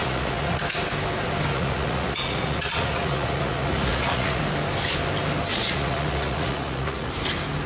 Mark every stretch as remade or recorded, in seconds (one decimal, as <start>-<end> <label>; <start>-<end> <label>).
0.0-0.6 remade; 0.6-1.5 recorded; 1.5-4.4 remade; 4.4-5.5 recorded; 5.5-7.1 remade; 7.1-7.7 recorded